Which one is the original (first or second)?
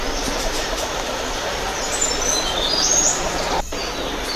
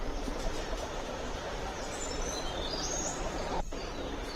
first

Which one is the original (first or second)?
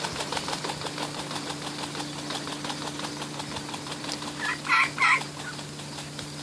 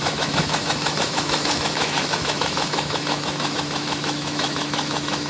first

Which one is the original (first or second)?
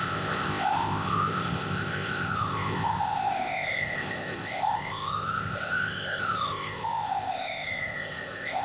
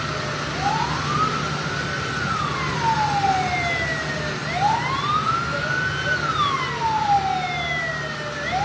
second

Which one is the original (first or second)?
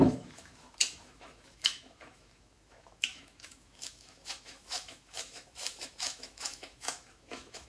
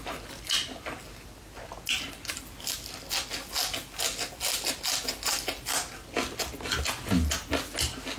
second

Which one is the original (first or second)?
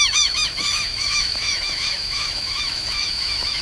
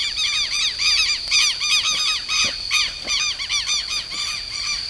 second